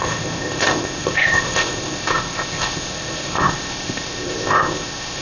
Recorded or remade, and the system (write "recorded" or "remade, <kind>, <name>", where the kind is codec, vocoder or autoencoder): remade, codec, ZipCodec